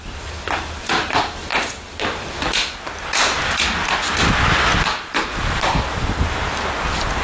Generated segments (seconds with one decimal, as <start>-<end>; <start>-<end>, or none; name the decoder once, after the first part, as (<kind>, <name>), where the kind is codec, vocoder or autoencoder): none